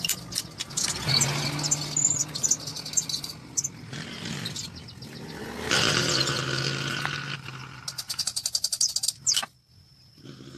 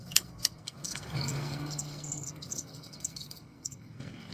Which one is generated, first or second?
second